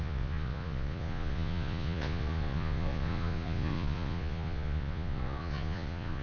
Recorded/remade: remade